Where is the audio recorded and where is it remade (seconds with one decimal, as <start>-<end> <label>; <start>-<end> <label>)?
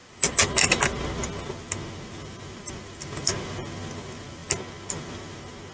0.0-5.7 recorded